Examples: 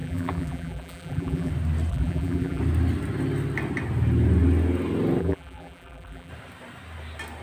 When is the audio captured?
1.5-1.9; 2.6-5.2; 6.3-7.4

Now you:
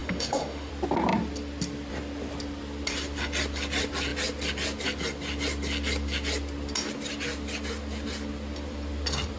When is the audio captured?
0.7-9.4

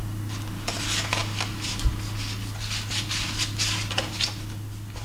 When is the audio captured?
0.0-5.0